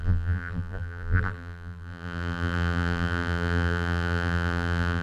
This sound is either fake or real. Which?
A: fake